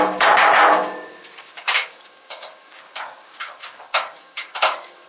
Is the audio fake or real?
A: fake